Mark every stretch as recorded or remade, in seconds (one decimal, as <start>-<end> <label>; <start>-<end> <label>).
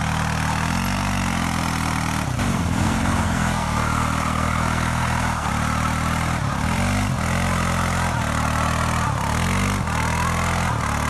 0.0-2.5 recorded; 2.5-5.5 remade; 5.5-11.1 recorded